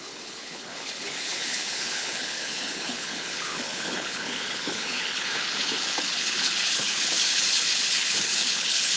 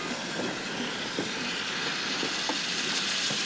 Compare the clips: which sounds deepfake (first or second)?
first